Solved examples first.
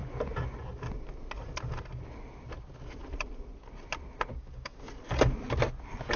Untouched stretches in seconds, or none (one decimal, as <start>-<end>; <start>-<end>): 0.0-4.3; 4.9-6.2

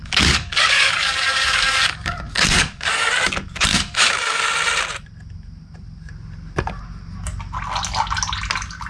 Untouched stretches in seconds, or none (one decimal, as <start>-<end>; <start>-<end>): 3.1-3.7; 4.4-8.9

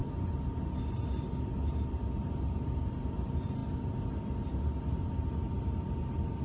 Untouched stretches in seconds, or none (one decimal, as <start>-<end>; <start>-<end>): 0.0-6.4

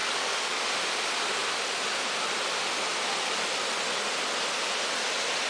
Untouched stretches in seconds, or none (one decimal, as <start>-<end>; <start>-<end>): 0.7-5.5

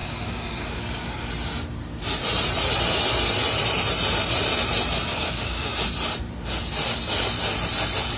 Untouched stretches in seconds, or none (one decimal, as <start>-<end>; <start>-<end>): 1.3-5.1; 5.7-8.2

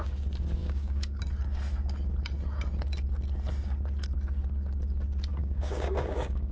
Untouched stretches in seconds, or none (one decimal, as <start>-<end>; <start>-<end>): 0.0-0.6; 1.2-5.3

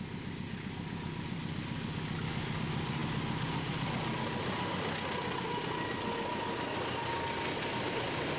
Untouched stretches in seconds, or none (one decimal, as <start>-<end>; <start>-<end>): 0.0-8.4